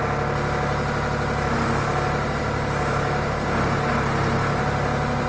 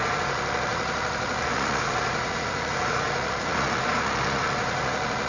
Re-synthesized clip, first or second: second